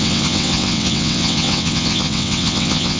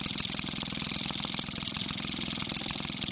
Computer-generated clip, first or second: first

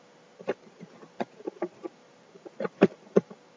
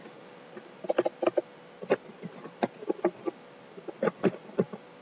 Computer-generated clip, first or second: first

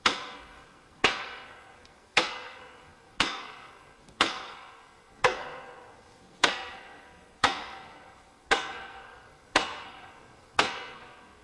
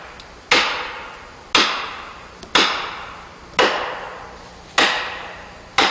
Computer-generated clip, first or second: first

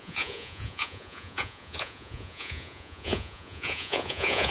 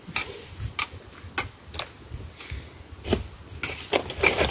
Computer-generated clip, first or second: first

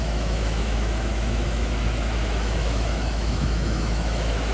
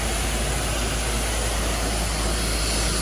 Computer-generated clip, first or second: first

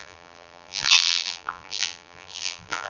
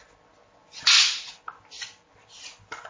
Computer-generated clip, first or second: first